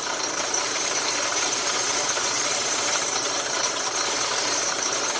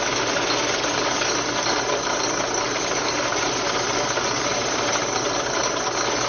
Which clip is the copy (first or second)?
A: first